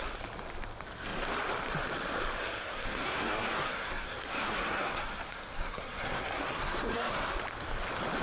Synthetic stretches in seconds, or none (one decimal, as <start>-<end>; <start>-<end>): 2.6-7.4